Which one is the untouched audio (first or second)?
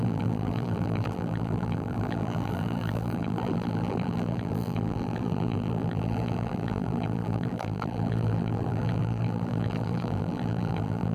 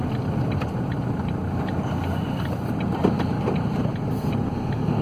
second